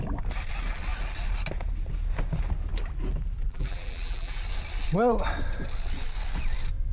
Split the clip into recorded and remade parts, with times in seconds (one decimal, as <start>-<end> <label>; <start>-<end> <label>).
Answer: 0.0-3.4 recorded; 3.4-4.4 remade; 4.4-6.9 recorded